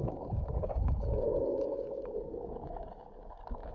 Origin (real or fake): fake